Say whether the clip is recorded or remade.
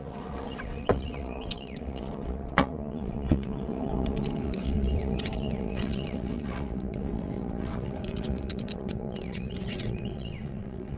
remade